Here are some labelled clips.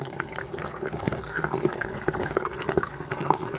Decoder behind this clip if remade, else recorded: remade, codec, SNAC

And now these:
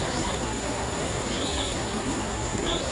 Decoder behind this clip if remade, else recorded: remade, codec, SNAC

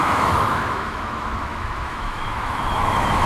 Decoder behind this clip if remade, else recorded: remade, autoencoder, DAC-VAE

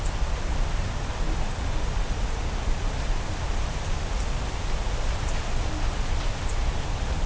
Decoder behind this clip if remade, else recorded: recorded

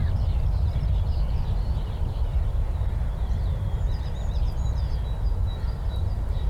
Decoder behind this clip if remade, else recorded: remade, vocoder, BigVGAN v2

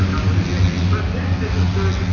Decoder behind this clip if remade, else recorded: recorded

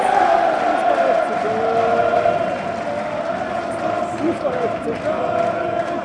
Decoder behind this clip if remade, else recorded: recorded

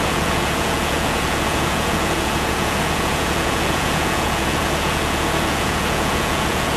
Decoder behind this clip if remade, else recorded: remade, vocoder, Vocos